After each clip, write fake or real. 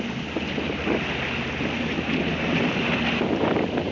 real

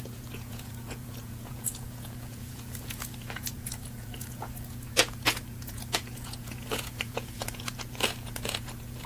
fake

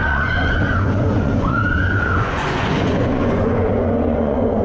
fake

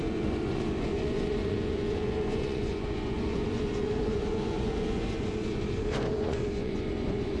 fake